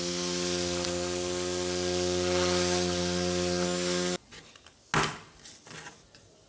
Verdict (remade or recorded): recorded